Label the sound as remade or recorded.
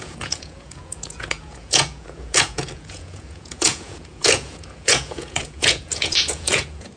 remade